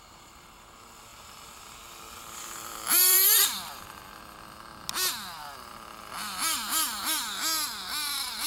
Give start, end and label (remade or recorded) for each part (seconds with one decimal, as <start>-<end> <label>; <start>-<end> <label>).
0.0-1.1 recorded; 1.1-3.8 remade; 3.8-5.4 recorded; 5.4-6.1 remade; 6.1-8.5 recorded